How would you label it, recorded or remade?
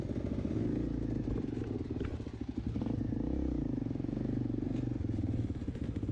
recorded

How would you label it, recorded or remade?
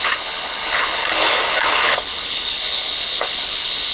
remade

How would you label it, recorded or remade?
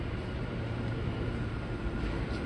remade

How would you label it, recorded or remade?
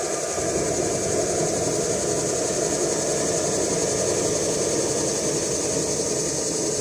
recorded